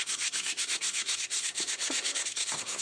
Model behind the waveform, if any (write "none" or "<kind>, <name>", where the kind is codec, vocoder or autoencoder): codec, SNAC